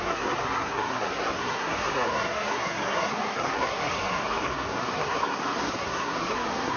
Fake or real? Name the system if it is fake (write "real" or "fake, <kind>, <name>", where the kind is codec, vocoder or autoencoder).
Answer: fake, codec, SNAC